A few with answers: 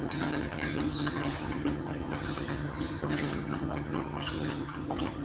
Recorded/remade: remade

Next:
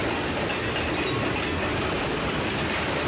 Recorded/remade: recorded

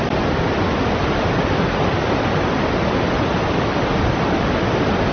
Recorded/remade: recorded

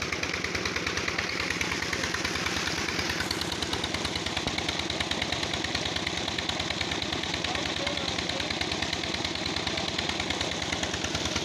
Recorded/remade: recorded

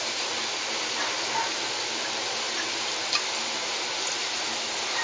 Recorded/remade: recorded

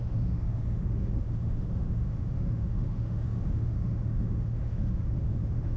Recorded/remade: remade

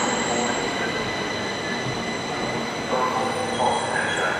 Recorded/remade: recorded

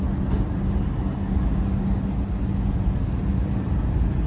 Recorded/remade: recorded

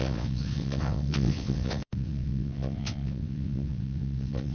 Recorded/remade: remade